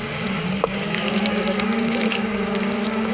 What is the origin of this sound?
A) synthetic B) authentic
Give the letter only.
A